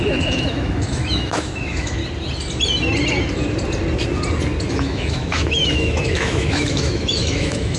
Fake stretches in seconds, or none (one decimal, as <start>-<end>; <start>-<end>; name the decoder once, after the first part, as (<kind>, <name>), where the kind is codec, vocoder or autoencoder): 0.0-2.0 (autoencoder, DAC-VAE); 4.7-7.8